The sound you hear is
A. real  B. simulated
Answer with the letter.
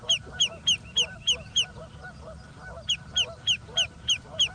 A